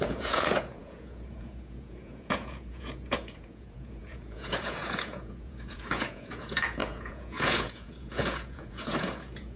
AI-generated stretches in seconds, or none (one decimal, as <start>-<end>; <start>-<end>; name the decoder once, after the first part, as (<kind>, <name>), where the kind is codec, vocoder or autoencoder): 0.0-9.6 (vocoder, Vocos)